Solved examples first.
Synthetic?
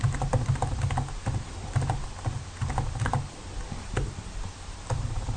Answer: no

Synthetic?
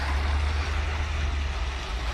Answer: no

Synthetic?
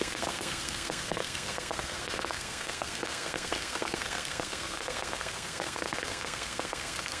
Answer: yes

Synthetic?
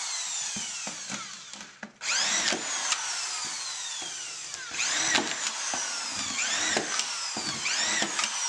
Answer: no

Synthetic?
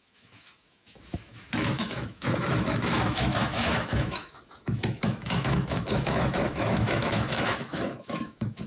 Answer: yes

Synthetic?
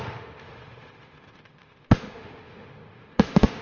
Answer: yes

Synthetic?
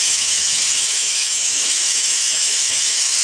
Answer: yes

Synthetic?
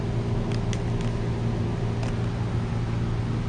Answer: no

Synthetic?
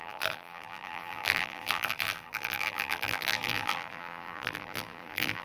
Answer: yes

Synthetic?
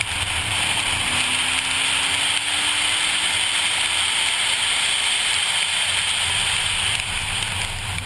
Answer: no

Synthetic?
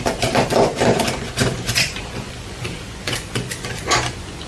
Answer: yes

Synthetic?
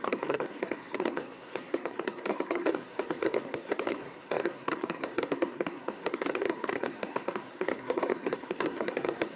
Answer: yes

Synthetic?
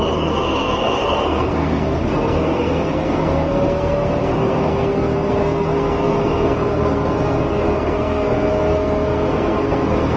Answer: yes